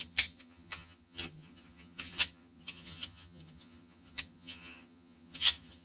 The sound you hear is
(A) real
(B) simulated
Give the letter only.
B